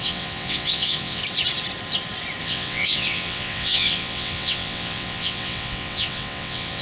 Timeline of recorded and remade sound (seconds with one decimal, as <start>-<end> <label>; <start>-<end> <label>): 0.0-1.2 remade; 1.2-2.4 recorded; 2.4-6.8 remade